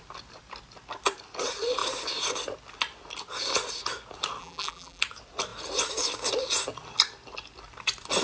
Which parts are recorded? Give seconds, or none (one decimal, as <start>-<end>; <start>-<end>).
0.0-4.4; 5.0-8.2